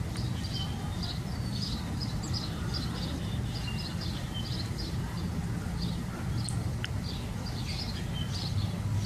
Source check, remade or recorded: remade